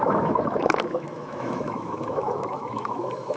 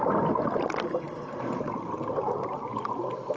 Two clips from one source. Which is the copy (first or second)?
first